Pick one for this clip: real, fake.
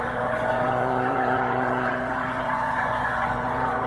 fake